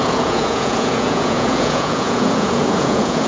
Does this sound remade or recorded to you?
remade